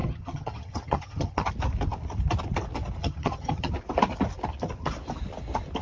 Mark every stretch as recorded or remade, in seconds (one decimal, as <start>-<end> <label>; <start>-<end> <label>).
0.0-1.5 remade; 1.5-3.0 recorded; 3.0-3.7 remade; 3.7-5.8 recorded